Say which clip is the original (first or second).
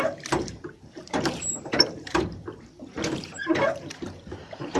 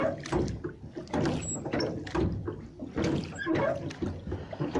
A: second